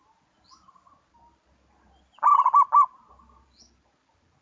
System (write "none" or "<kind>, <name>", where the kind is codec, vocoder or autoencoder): none